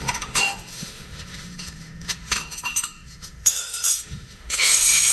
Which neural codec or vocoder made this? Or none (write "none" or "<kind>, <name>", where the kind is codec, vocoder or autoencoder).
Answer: autoencoder, DAC-VAE